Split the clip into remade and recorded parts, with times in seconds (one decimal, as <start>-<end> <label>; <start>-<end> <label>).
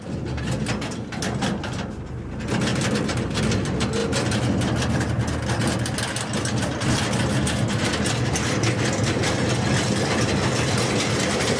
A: 0.0-11.6 recorded